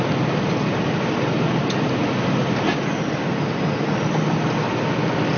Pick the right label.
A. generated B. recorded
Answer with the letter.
B